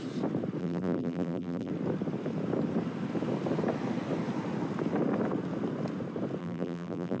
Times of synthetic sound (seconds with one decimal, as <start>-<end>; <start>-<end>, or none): 0.6-1.7; 6.4-7.2